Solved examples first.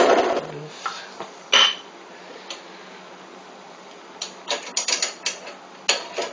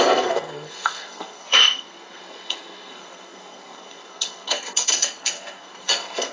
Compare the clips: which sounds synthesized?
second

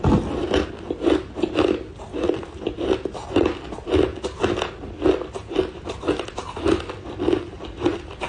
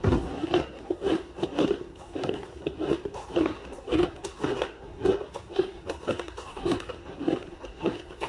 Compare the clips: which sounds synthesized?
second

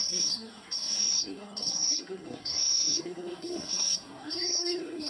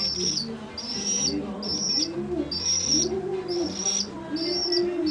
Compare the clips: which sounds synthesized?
first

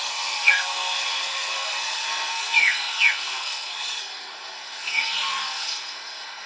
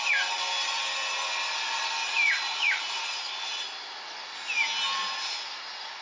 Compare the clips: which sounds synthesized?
first